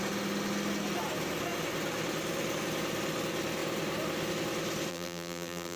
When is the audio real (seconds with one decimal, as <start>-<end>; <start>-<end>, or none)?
0.0-4.9